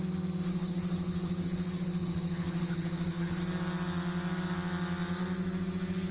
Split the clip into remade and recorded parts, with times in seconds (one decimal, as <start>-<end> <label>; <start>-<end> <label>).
0.0-0.5 recorded; 0.5-3.4 remade; 3.4-6.1 recorded